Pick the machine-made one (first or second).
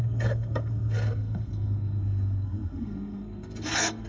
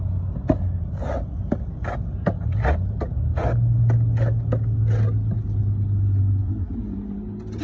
first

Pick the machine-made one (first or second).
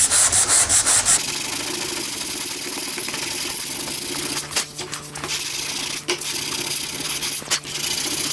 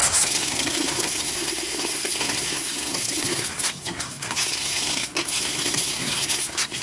second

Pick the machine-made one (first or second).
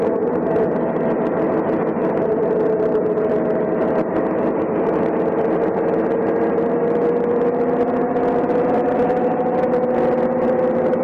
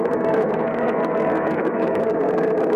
second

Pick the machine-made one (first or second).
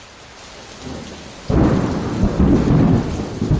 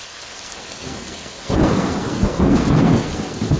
second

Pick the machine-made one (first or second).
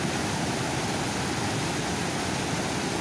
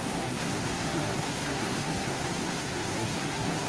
second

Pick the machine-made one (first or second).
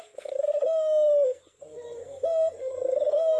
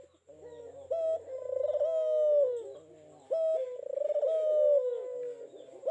first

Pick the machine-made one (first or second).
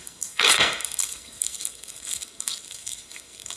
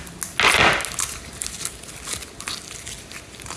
first